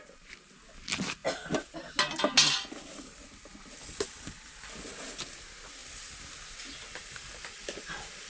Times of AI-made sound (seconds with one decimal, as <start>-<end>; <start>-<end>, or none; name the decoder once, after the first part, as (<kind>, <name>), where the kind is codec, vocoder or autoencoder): none